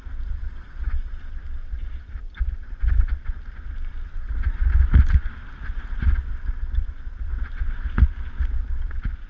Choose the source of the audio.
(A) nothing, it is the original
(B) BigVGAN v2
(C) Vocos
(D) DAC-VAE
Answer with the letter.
A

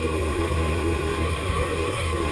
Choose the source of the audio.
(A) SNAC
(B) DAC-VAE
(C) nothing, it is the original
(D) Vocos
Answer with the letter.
A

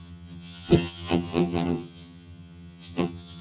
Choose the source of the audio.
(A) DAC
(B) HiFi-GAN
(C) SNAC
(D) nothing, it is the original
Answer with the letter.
B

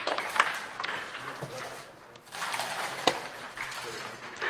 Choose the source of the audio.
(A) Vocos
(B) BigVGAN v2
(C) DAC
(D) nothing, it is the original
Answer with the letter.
B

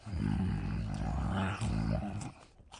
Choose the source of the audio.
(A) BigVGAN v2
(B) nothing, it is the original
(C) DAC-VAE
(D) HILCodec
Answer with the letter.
B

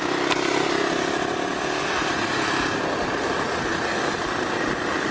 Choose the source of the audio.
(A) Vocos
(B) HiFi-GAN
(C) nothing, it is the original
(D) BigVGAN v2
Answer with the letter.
C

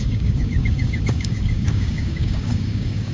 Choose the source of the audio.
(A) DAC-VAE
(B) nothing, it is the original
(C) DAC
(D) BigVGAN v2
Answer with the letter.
C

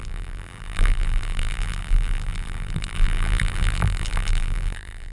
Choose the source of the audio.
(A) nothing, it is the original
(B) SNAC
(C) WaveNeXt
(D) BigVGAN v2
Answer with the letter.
D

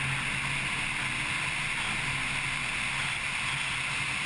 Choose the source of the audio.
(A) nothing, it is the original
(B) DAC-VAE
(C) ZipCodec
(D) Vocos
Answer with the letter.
A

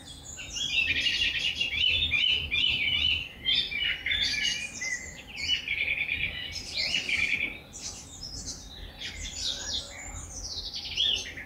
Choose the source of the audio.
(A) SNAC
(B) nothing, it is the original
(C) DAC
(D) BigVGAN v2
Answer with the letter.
D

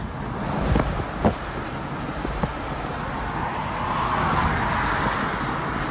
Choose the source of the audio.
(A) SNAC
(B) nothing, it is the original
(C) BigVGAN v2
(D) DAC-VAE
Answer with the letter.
B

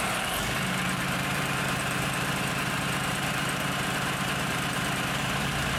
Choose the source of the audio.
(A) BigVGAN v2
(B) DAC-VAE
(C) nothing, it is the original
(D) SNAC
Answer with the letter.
A